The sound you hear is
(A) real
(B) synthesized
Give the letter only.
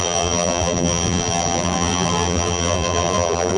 B